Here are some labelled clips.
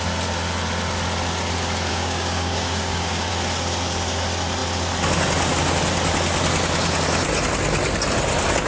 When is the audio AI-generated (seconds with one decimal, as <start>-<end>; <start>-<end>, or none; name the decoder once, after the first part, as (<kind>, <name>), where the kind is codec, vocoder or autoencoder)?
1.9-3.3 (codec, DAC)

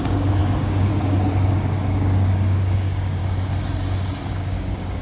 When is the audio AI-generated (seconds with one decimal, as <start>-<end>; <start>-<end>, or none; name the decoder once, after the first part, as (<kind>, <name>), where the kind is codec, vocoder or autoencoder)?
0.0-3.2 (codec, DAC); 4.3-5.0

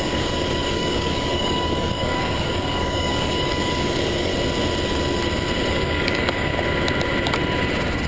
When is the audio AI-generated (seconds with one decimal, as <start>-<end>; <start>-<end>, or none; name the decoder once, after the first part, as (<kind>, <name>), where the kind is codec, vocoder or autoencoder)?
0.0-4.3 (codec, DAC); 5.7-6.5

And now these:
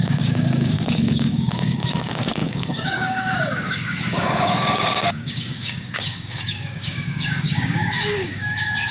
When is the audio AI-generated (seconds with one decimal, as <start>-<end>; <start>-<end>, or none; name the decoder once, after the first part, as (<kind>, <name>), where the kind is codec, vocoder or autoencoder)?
0.0-8.9 (codec, DAC)

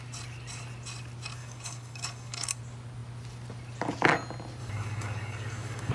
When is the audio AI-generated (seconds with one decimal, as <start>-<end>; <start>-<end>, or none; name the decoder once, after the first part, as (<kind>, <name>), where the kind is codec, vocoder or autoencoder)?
1.4-2.6 (codec, DAC); 4.6-5.9

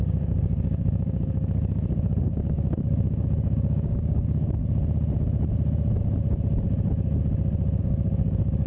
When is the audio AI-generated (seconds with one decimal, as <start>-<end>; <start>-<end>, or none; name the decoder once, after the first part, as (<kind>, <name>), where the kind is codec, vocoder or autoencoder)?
0.0-4.6 (codec, DAC); 7.8-8.7

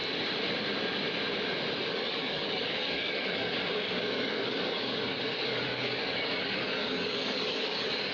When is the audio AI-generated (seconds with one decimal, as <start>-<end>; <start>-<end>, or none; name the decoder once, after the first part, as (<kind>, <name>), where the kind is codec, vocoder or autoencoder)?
1.9-8.1 (codec, DAC)